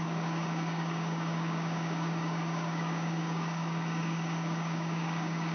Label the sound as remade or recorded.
remade